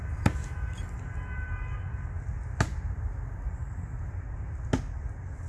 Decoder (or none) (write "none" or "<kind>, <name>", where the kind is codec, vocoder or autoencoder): none